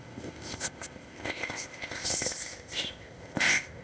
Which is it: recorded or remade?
remade